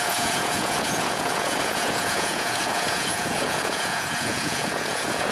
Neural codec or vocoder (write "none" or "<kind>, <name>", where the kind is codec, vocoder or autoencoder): vocoder, Vocos